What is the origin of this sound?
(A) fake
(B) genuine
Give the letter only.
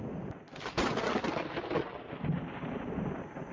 B